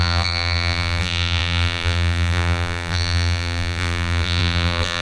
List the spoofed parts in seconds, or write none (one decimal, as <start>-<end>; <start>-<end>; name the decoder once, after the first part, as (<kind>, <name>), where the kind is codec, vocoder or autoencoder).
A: 0.0-5.0 (vocoder, BigVGAN v2)